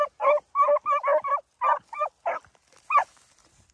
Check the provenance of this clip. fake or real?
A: real